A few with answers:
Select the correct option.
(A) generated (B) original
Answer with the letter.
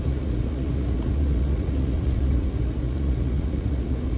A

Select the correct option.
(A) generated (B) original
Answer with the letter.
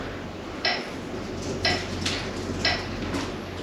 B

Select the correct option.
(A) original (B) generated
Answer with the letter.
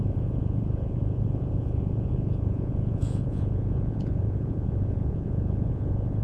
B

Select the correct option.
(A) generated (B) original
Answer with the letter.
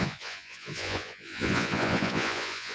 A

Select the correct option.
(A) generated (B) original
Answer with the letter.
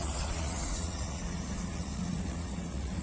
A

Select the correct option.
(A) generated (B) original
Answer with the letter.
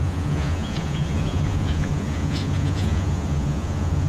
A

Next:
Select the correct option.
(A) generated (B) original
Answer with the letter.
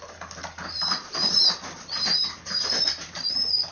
B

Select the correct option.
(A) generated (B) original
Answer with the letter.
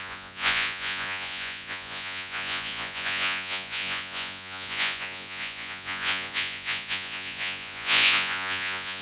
A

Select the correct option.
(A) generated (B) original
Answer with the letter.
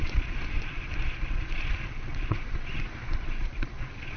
A